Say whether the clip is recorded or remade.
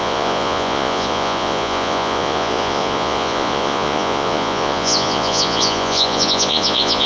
remade